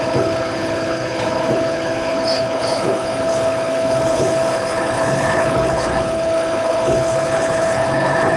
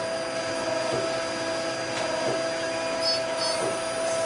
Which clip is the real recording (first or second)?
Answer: second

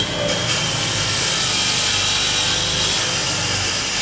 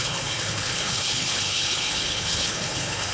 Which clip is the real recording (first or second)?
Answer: first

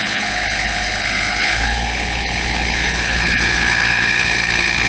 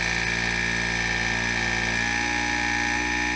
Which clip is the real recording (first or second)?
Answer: second